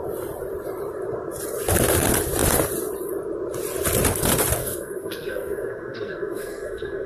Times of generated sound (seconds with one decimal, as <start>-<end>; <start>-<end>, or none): 4.6-7.1